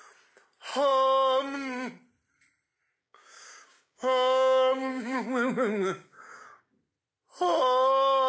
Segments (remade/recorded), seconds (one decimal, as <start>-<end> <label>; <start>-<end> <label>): 0.0-3.0 recorded; 3.0-6.7 remade; 6.7-8.3 recorded